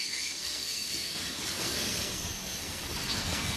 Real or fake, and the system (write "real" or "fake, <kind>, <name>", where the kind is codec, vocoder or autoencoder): fake, codec, SNAC